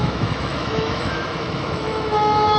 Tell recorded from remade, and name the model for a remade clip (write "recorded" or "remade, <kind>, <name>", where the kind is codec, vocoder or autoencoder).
remade, autoencoder, DAC-VAE